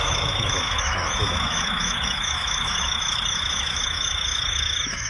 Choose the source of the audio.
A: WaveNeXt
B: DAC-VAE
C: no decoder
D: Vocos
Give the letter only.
B